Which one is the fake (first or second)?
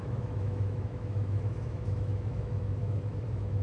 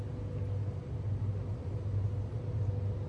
first